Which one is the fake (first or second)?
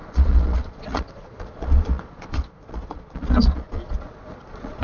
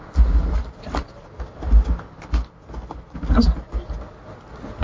first